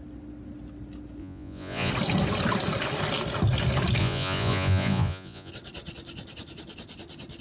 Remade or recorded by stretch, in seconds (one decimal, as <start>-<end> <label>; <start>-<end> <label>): 0.0-1.2 recorded; 1.2-1.9 remade; 1.9-4.0 recorded; 4.0-5.5 remade; 5.5-7.4 recorded